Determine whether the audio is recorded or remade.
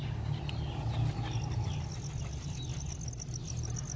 recorded